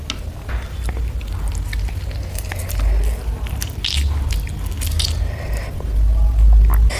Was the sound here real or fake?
real